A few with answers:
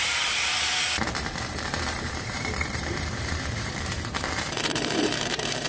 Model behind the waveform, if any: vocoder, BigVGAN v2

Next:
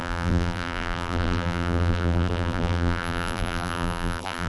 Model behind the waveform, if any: vocoder, BigVGAN v2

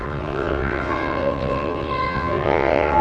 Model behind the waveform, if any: vocoder, WaveNeXt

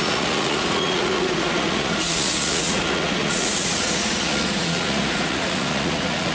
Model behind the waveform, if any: vocoder, Vocos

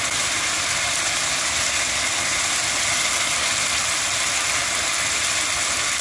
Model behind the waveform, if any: none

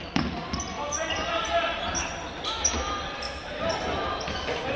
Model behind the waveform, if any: none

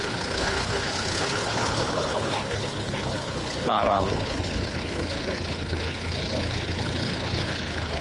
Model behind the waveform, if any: codec, HILCodec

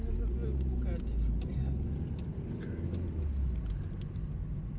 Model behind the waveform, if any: none